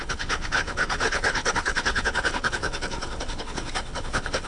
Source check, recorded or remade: remade